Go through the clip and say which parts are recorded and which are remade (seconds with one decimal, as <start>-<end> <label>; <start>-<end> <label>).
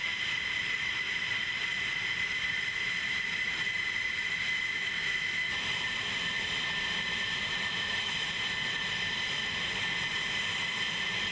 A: 0.0-2.5 remade; 2.5-11.3 recorded